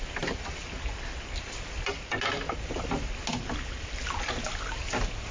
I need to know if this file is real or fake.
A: real